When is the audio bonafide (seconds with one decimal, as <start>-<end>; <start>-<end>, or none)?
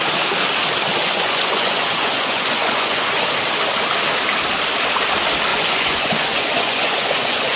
0.0-1.0; 3.2-5.5